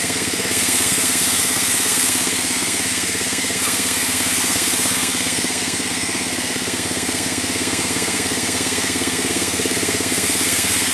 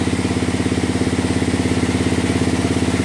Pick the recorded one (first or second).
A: second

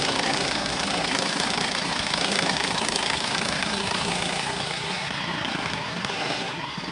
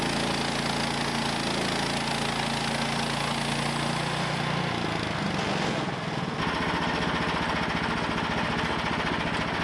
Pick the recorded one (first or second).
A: second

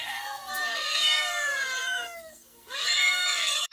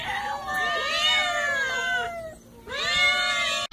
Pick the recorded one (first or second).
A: second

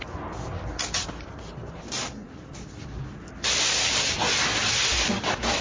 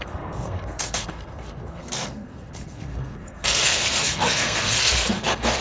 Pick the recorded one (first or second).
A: first